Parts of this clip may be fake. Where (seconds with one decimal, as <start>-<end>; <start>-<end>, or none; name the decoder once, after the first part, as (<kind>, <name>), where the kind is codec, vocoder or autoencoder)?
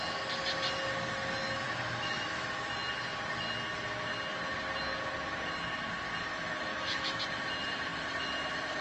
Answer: 1.4-2.5 (autoencoder, DAC-VAE); 6.7-7.2